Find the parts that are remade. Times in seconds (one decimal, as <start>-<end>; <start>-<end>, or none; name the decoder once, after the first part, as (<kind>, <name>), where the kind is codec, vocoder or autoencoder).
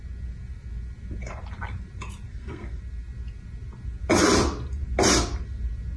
2.3-2.8 (codec, SNAC)